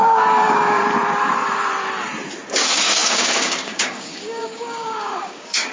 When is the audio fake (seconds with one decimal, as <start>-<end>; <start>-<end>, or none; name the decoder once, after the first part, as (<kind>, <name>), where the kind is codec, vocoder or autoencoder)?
0.0-0.8 (codec, DAC); 2.5-5.7